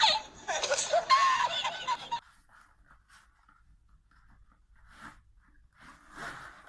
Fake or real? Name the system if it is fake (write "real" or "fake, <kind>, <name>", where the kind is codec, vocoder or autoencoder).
real